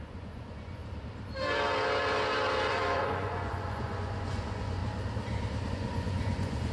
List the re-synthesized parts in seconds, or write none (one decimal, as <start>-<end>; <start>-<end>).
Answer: 0.0-0.8; 2.7-4.8; 5.7-6.7